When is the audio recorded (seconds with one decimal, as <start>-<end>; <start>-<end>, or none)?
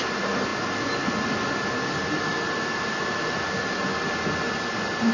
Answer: 0.0-5.1